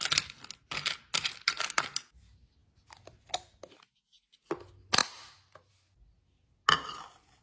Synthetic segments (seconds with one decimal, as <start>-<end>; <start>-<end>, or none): none